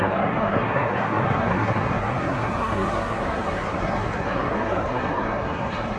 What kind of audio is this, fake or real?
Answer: fake